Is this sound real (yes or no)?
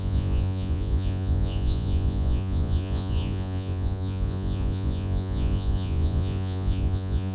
no